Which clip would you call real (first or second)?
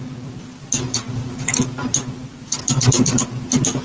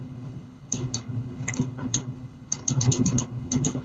first